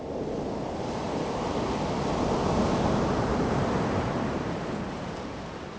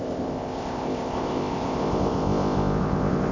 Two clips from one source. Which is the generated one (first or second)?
second